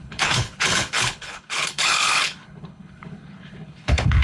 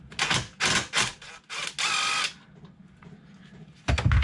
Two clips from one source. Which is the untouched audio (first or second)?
second